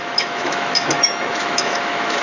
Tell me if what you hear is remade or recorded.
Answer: remade